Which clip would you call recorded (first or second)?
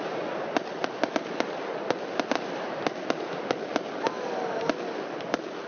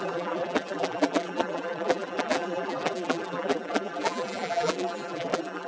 first